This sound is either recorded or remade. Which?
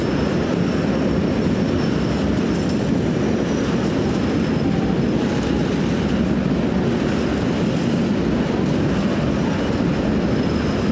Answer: recorded